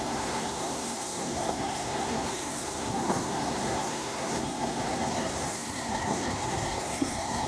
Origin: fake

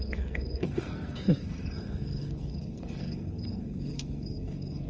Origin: fake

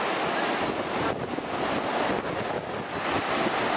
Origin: real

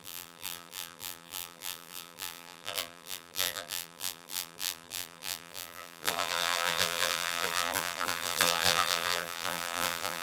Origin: fake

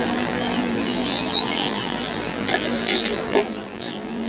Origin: fake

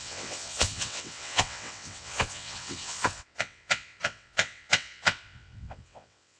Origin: fake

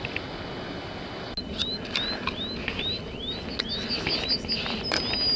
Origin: real